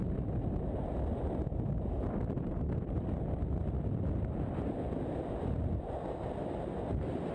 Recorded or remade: recorded